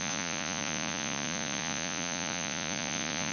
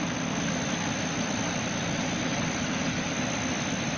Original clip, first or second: second